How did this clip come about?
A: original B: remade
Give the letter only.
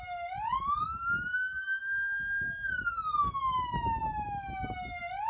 A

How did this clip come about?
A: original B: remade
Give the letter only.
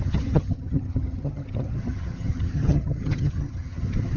B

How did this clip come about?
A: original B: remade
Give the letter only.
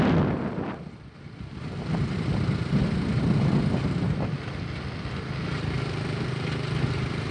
A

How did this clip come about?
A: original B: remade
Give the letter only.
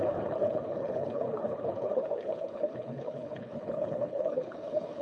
B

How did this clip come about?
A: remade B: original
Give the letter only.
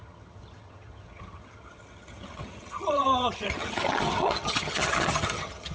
A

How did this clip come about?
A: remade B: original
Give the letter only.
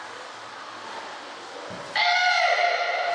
B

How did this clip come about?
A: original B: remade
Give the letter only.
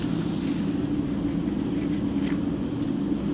A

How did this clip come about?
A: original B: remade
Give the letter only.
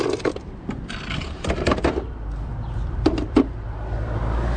B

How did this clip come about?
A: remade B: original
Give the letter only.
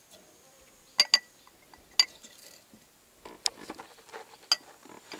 B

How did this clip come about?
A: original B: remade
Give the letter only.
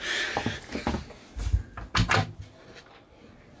A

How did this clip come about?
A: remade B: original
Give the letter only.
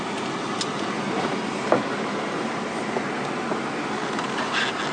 B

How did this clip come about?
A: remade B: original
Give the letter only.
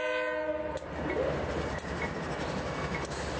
B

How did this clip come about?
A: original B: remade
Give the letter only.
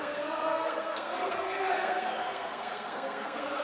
B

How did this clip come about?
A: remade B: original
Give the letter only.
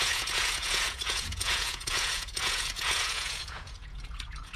A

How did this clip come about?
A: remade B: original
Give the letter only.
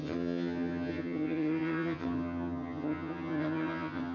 A